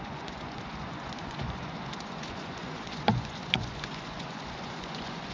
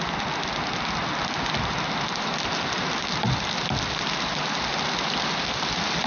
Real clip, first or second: second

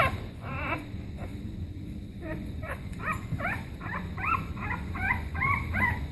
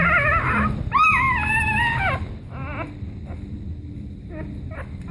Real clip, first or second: second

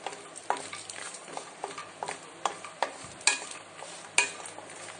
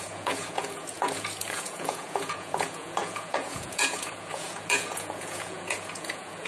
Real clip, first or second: first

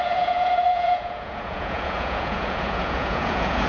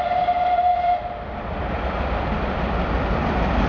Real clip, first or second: second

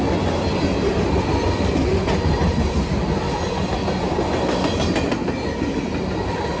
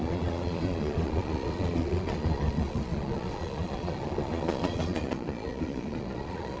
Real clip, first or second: first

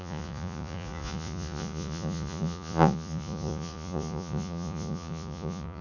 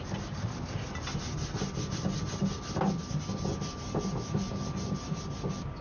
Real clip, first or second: second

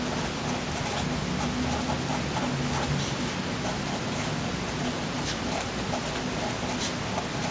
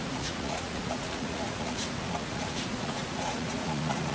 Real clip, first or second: first